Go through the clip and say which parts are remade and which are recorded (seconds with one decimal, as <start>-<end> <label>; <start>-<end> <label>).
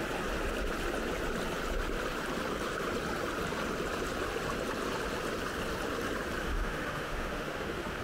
0.0-6.4 recorded; 6.4-8.0 remade